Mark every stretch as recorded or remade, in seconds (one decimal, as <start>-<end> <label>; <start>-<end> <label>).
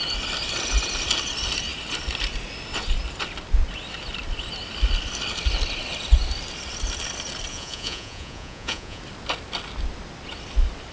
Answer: 0.0-7.5 recorded; 7.5-9.0 remade; 9.0-10.9 recorded